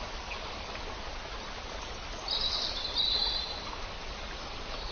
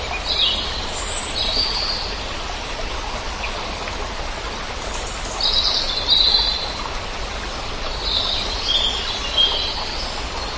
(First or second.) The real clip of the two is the second